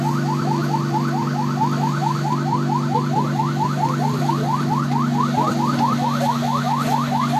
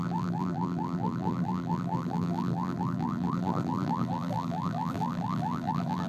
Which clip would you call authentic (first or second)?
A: first